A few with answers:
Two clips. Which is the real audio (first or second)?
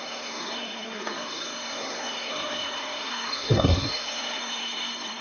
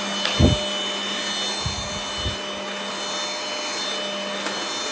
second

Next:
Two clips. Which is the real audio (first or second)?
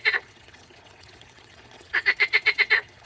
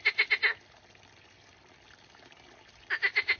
second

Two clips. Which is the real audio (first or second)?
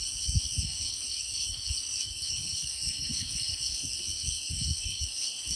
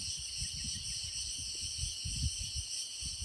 second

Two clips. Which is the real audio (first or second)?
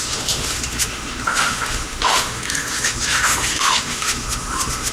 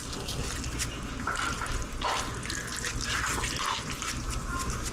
second